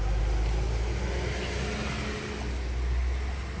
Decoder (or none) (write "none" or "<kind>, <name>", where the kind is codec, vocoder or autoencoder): none